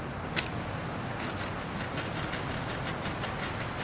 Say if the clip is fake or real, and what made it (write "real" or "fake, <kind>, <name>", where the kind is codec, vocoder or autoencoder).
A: real